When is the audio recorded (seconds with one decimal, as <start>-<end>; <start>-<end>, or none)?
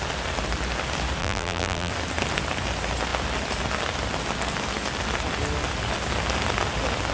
0.0-1.2; 1.9-7.1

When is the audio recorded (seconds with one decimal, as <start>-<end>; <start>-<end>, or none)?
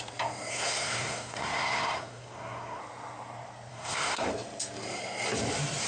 0.0-0.5; 2.8-3.7; 4.3-5.9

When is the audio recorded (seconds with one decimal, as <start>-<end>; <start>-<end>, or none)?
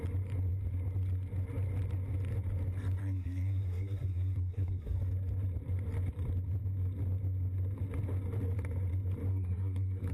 0.0-3.0; 5.0-9.3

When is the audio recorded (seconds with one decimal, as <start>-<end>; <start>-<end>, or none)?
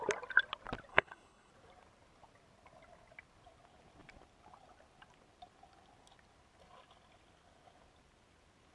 0.0-0.9; 1.5-8.7